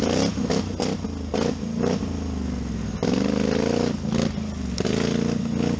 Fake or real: real